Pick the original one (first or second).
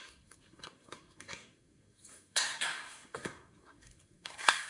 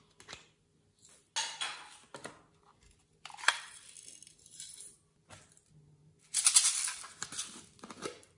second